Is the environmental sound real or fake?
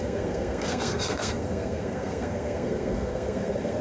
fake